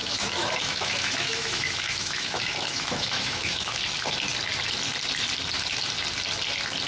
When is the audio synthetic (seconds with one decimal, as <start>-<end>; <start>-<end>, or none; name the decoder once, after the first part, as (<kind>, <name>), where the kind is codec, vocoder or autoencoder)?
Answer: 0.0-3.8 (autoencoder, DAC-VAE)